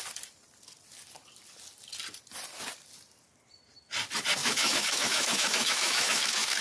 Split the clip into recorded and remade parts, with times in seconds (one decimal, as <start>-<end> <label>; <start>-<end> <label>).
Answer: 0.0-4.4 recorded; 4.4-6.6 remade